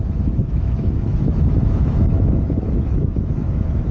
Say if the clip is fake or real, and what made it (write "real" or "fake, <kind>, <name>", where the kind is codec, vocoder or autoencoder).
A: fake, autoencoder, DAC-VAE